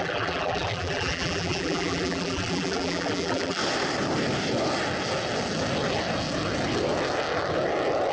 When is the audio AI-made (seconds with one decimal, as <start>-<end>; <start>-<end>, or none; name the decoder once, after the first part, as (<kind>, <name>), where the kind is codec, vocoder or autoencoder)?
0.0-3.6 (vocoder, BigVGAN v2)